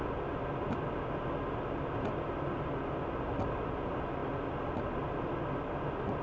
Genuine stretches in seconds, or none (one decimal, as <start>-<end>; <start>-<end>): 0.0-6.2